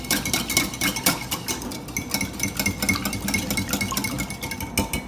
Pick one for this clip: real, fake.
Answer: real